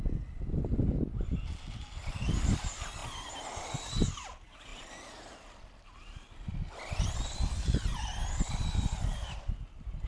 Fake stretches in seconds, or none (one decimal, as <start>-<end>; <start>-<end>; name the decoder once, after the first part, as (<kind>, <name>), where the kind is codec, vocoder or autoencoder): none